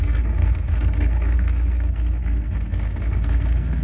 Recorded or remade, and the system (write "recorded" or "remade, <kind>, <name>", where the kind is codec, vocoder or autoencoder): remade, codec, SNAC